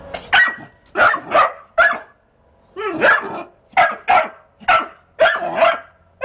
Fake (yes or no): no